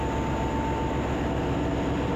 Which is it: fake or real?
real